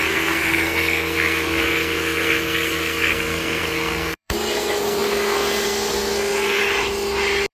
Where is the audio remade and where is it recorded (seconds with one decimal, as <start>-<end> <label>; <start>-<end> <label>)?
0.0-6.6 remade; 6.6-7.5 recorded